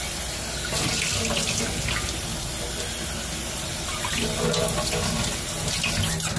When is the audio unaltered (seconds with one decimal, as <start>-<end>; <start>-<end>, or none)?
0.0-6.4